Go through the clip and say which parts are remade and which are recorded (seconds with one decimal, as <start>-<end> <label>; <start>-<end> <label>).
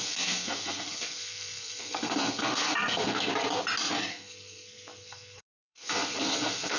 0.0-3.3 remade; 3.3-4.1 recorded; 4.1-6.8 remade